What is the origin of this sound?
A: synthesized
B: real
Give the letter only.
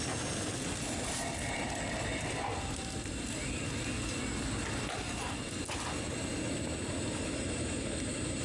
B